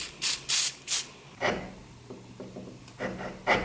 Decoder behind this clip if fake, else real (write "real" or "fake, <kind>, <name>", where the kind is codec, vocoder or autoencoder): real